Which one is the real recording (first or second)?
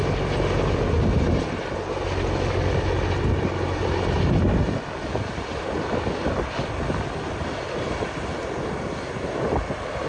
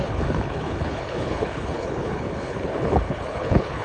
first